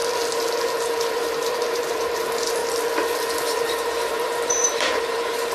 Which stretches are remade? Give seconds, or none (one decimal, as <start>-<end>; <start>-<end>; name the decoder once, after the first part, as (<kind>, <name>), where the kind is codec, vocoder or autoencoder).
1.1-2.6 (vocoder, BigVGAN v2); 4.1-5.5